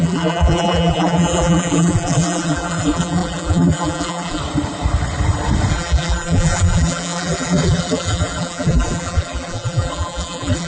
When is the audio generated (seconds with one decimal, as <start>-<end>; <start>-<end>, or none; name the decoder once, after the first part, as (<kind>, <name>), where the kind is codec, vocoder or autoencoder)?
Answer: 0.0-4.4 (vocoder, BigVGAN v2); 5.7-10.7